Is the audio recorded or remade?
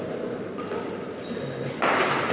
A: recorded